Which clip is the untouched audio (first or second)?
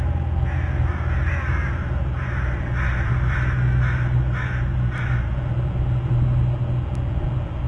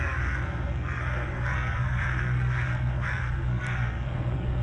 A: first